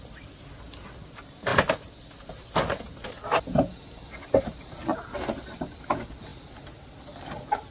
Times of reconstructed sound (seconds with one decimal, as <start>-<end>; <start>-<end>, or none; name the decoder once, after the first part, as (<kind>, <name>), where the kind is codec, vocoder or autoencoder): none